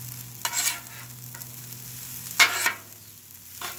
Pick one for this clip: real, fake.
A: real